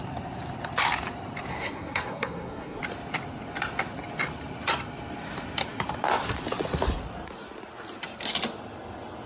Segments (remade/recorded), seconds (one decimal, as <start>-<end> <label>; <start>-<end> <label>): 0.0-1.5 recorded; 1.5-2.8 remade; 2.8-9.3 recorded